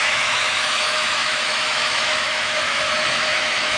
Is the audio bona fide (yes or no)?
no